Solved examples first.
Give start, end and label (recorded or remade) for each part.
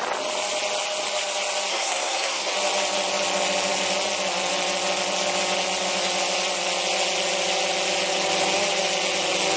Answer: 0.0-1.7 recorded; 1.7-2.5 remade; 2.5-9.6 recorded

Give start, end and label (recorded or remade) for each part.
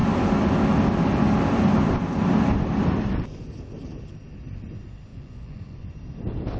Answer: 0.0-5.1 recorded; 5.1-5.9 remade; 5.9-6.6 recorded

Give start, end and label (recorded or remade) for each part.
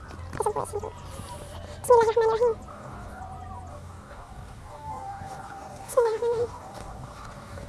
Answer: 0.0-2.7 recorded; 2.7-3.2 remade; 3.2-3.7 recorded; 3.7-7.7 remade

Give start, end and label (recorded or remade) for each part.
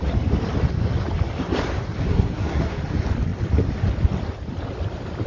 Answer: 0.0-2.1 recorded; 2.1-2.8 remade; 2.8-5.3 recorded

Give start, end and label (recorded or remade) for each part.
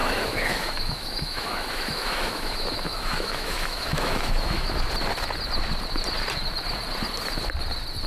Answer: 0.0-4.9 remade; 4.9-8.1 recorded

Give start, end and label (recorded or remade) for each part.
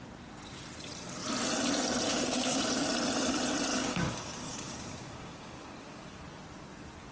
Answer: 0.0-2.1 recorded; 2.1-2.6 remade; 2.6-3.7 recorded; 3.7-5.7 remade; 5.7-7.1 recorded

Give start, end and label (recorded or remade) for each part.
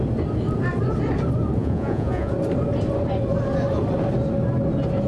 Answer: 0.0-1.6 recorded; 1.6-2.3 remade; 2.3-5.1 recorded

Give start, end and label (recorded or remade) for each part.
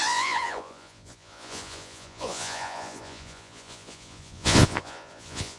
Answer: 0.0-5.6 remade